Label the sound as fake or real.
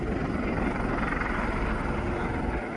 real